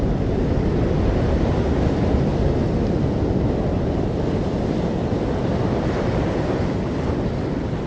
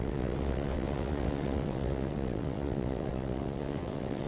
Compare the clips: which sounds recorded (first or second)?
first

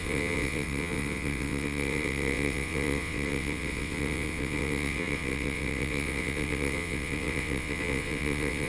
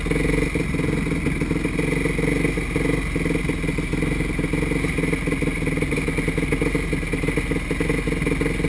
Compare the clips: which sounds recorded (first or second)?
second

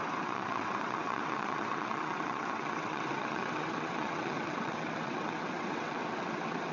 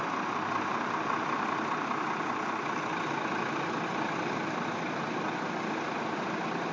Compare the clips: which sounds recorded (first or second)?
second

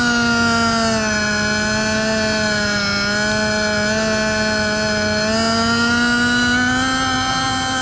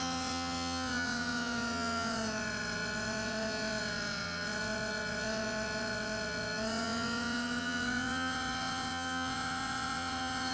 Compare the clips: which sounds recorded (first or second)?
first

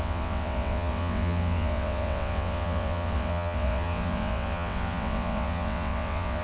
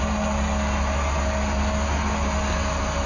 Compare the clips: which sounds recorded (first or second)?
second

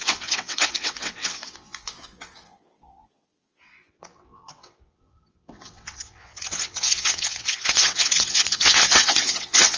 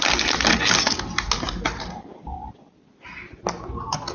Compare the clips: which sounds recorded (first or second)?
second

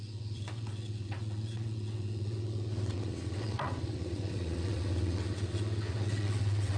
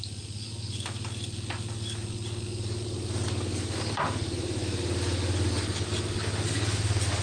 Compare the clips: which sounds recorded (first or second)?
second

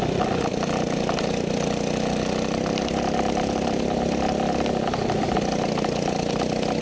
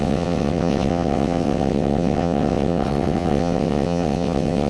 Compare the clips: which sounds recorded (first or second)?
first